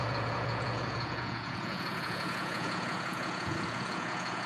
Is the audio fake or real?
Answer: fake